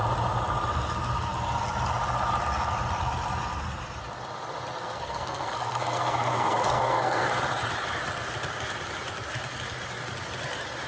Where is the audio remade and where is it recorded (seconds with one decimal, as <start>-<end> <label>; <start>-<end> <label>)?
0.0-4.8 recorded; 4.8-7.3 remade; 7.3-10.9 recorded